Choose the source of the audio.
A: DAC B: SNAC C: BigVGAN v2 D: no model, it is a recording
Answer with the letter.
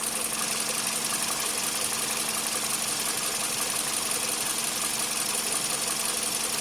D